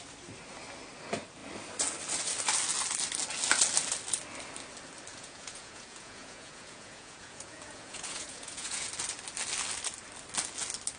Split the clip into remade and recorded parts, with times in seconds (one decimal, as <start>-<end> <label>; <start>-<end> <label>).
0.0-5.1 recorded; 5.1-8.9 remade; 8.9-11.0 recorded